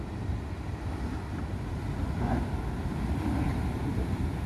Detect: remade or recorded recorded